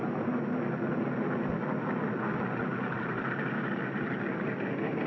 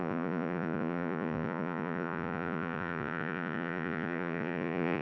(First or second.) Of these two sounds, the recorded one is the first